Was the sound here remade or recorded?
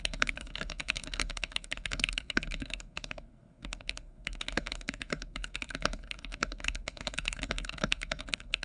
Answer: remade